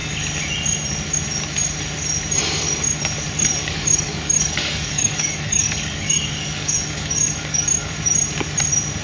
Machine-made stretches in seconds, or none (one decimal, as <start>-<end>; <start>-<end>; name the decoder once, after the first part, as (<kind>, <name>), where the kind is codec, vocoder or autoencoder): 3.6-7.9 (codec, DAC)